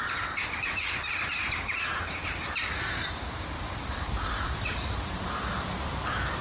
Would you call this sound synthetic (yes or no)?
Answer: yes